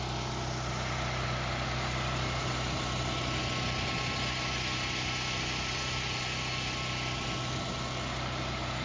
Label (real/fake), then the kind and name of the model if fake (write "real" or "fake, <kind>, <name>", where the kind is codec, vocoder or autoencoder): real